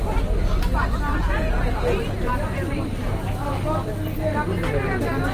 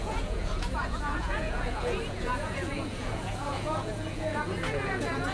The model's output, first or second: second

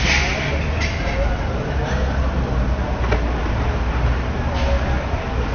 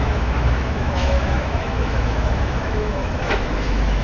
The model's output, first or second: second